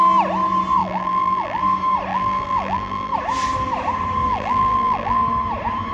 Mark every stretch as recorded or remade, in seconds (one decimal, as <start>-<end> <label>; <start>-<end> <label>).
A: 0.0-0.8 recorded; 0.8-1.6 remade; 1.6-2.1 recorded; 2.1-3.1 remade; 3.1-4.3 recorded; 4.3-5.2 remade; 5.2-5.9 recorded